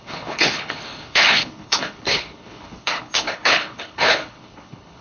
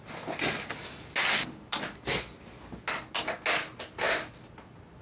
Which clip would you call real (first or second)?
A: second